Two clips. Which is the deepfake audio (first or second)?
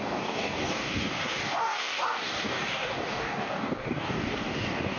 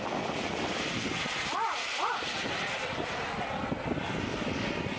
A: first